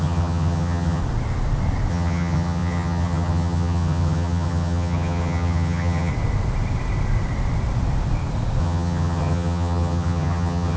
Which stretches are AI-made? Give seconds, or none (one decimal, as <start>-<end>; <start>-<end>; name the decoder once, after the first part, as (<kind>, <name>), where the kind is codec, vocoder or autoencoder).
0.0-1.0 (vocoder, HiFi-GAN); 1.9-6.1; 8.6-10.8